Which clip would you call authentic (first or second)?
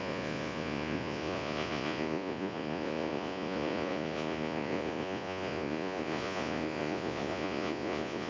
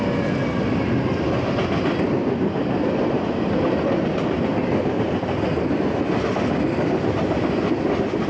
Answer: second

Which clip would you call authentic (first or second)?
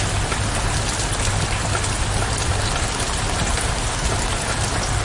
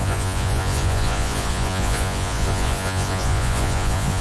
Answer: first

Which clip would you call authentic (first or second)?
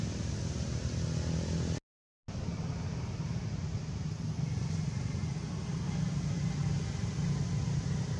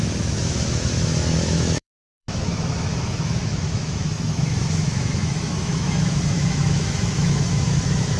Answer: first